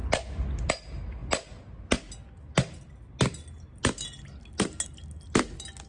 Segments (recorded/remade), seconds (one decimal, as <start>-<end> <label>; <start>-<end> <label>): 0.0-5.9 recorded